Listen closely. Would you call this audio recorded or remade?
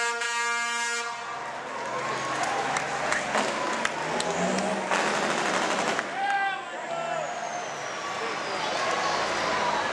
recorded